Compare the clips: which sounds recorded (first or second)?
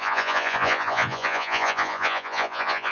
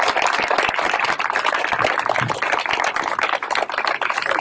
second